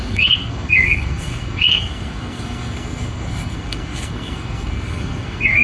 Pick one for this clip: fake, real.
fake